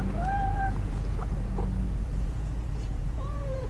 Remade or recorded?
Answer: remade